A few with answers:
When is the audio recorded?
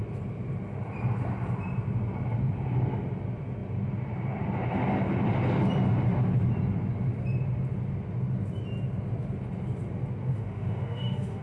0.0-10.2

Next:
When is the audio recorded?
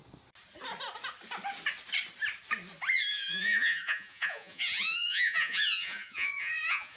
0.0-3.1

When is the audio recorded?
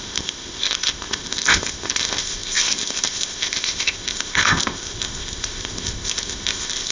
none